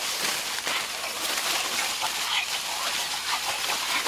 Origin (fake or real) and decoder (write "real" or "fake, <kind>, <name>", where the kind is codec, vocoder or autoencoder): real